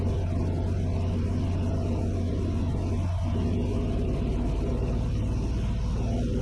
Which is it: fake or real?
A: real